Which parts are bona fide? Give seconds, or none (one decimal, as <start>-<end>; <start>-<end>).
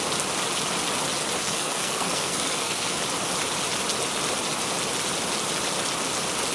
0.0-1.4; 3.0-6.5